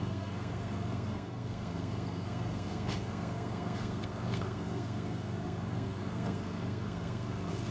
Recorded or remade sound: remade